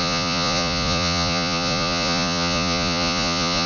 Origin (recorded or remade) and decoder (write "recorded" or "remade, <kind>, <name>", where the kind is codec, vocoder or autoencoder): remade, vocoder, Vocos